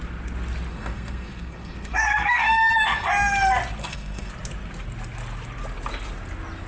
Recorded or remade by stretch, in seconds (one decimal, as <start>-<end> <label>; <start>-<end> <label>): 0.0-0.7 recorded; 0.7-3.1 remade; 3.1-3.8 recorded; 3.8-4.3 remade; 4.3-6.7 recorded